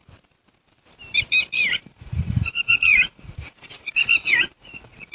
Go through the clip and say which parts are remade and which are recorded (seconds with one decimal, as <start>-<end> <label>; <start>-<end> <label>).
0.0-1.7 recorded; 1.7-5.1 remade